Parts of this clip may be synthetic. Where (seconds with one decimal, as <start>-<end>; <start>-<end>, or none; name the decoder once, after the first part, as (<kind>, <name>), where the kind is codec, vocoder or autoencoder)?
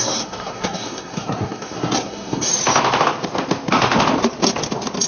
0.0-2.5 (codec, SNAC)